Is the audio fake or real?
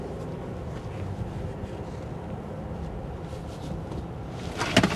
real